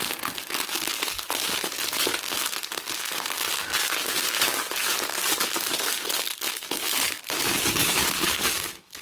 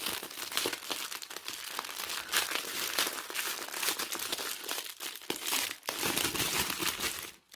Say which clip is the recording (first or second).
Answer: second